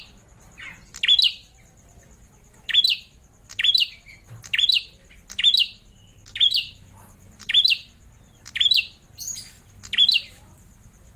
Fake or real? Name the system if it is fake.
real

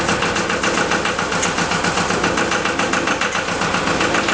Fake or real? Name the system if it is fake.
real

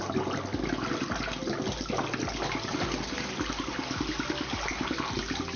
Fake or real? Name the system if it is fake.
real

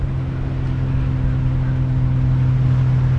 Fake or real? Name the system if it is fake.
real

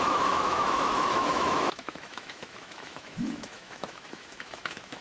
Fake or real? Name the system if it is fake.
fake, autoencoder, DAC-VAE